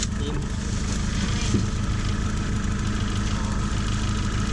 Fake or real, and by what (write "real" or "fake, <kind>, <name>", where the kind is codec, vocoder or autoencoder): real